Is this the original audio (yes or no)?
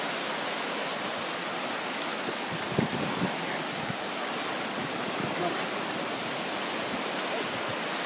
yes